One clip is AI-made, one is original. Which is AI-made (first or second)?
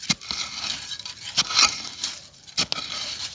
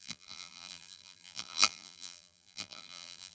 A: second